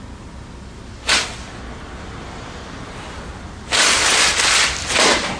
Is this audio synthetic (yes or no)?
no